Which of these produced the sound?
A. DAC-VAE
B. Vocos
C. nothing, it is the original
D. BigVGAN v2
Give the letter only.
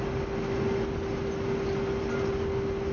C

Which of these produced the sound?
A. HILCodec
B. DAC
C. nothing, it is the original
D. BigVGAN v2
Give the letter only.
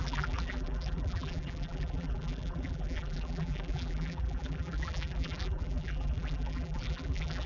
D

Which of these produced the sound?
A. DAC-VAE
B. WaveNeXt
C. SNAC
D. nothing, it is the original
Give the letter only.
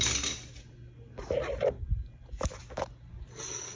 D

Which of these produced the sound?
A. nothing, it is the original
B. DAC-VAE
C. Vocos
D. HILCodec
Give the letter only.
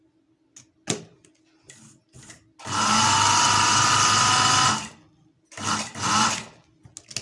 A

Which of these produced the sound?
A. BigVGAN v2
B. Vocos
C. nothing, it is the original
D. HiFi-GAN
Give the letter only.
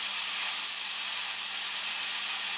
C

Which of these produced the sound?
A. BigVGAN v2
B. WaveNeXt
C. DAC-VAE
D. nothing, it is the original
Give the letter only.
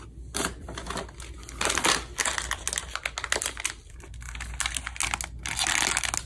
D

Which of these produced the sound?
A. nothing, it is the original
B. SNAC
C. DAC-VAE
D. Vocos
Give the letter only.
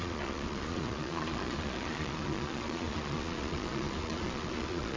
D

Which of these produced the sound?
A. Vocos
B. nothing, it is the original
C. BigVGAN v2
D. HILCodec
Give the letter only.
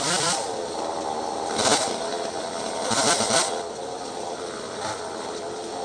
C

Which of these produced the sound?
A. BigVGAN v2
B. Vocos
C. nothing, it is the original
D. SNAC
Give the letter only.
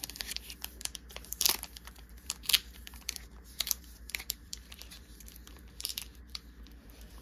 A